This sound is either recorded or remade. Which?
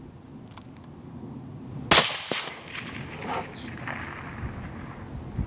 recorded